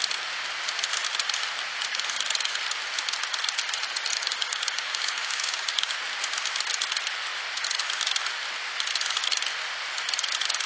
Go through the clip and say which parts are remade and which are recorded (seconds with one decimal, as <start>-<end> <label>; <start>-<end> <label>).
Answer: 0.0-4.1 recorded; 4.1-5.9 remade; 5.9-10.7 recorded